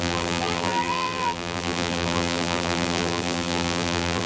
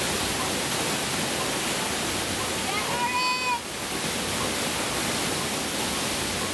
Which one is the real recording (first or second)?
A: second